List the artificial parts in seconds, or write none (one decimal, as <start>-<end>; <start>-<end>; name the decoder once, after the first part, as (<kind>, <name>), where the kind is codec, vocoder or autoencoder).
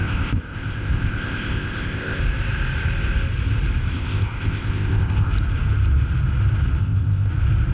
0.0-2.2 (codec, ZipCodec); 3.9-5.3; 6.8-7.3